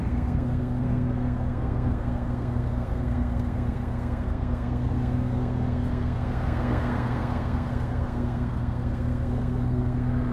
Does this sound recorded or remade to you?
remade